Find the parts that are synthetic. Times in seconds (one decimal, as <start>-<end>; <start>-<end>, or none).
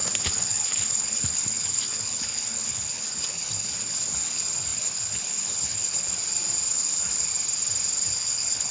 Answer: 0.0-6.2; 6.7-7.3; 8.1-8.7